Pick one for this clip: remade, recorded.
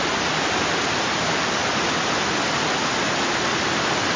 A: recorded